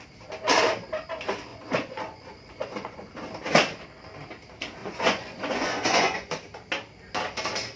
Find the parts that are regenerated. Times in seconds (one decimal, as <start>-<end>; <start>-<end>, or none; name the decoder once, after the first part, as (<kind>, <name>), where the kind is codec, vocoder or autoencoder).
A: 1.5-3.1 (vocoder, Vocos); 4.8-6.3

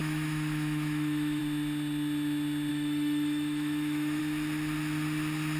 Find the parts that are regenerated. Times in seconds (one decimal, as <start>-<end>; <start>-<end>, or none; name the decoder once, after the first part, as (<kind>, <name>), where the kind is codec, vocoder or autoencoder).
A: 0.0-1.4 (autoencoder, DAC-VAE); 2.7-4.2

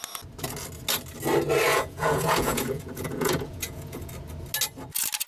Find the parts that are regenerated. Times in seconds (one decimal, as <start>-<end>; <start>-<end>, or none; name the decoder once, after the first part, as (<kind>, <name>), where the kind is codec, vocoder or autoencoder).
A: 1.7-4.1 (vocoder, Vocos)

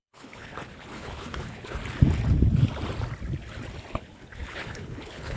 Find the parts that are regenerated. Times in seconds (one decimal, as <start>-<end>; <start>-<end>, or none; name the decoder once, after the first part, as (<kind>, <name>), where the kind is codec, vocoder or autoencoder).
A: 0.0-1.8 (codec, HILCodec); 3.9-5.4